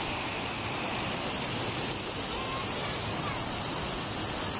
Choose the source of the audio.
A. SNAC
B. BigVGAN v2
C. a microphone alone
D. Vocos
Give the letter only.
C